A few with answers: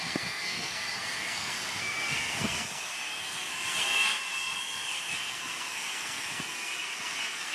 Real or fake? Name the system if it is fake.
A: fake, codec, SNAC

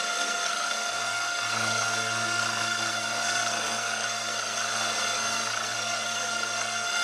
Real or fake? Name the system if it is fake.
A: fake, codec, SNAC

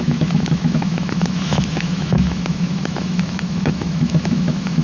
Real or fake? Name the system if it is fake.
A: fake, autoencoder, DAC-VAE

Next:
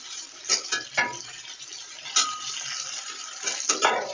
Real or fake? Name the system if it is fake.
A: real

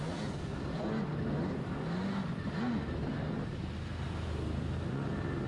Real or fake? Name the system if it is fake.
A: real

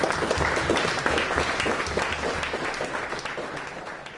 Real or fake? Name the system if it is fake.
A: real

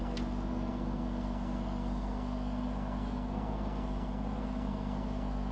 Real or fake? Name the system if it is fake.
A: fake, codec, SNAC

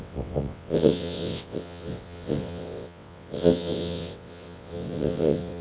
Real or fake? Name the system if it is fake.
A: fake, vocoder, WaveNeXt